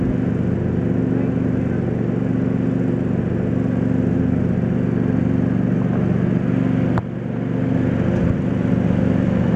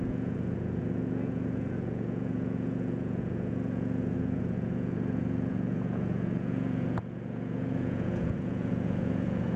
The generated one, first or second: second